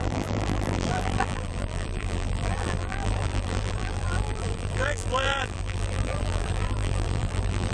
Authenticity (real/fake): fake